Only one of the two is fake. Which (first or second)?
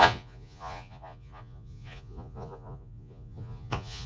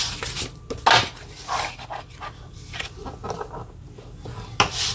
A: first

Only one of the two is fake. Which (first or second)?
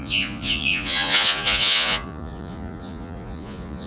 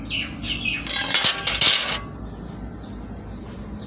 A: first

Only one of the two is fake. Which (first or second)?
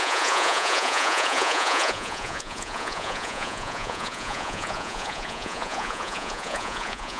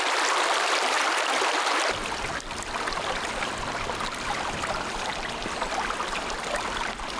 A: first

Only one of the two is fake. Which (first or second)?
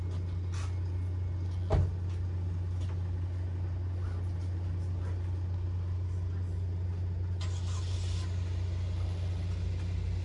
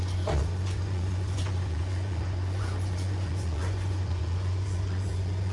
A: second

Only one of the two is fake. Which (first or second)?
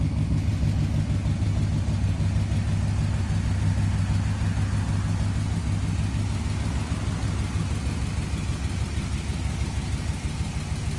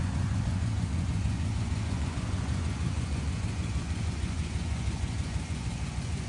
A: second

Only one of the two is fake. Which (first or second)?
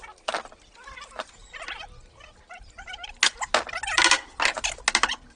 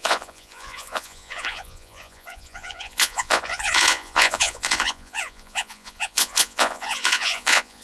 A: second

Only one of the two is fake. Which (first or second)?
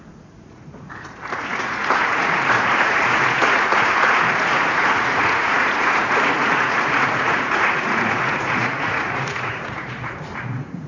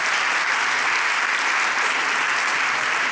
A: first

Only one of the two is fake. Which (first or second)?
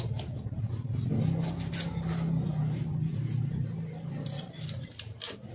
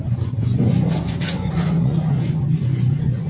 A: second